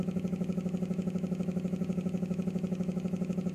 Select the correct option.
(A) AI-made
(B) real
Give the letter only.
A